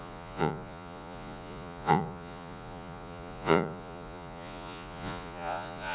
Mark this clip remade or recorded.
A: remade